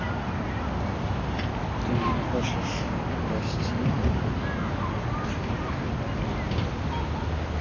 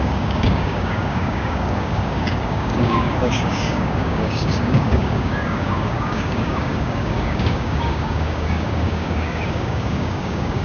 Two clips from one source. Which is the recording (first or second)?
first